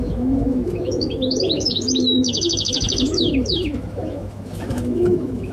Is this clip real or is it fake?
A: fake